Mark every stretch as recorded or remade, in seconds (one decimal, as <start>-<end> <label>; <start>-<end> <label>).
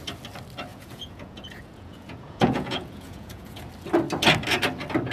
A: 0.0-0.7 recorded; 0.7-3.7 remade; 3.7-5.1 recorded